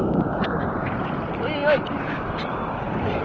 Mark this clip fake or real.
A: real